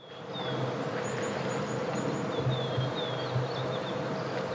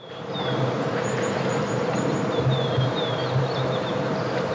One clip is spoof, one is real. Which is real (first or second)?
first